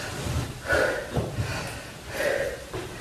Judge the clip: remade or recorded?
recorded